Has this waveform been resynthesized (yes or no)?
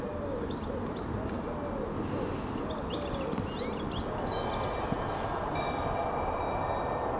no